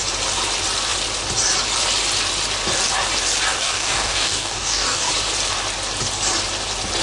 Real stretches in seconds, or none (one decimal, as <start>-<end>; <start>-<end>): 0.0-3.5; 5.1-7.0